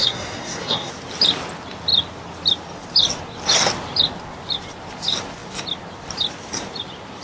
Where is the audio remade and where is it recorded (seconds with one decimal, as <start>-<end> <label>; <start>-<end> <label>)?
0.0-0.9 remade; 0.9-7.2 recorded